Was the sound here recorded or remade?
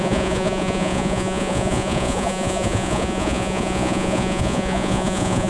remade